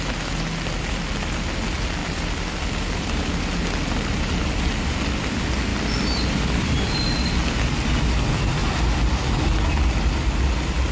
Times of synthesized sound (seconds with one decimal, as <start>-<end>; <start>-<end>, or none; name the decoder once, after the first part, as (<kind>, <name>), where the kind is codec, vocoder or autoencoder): 2.0-3.3 (vocoder, BigVGAN v2); 5.7-7.1; 8.6-9.3